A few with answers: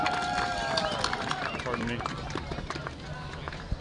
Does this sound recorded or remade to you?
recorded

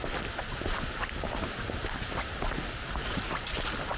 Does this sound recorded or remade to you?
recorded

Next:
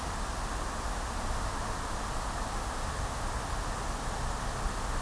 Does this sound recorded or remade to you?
recorded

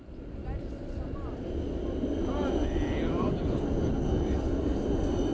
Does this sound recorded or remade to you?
recorded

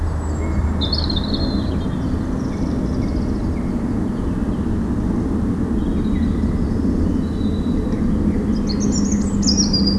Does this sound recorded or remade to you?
recorded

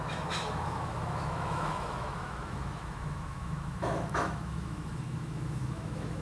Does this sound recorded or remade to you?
remade